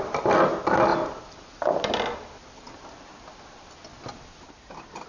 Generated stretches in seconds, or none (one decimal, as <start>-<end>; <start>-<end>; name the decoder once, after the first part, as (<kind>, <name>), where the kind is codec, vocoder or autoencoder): none